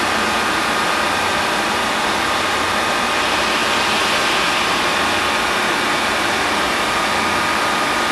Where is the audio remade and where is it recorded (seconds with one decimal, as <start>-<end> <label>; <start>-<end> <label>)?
0.0-8.1 recorded